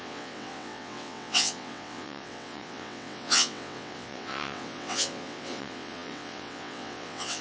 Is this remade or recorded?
remade